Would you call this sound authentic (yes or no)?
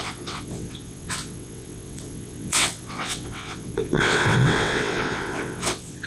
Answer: no